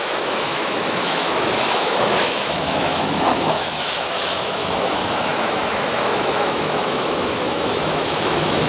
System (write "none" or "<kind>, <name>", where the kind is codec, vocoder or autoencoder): autoencoder, DAC-VAE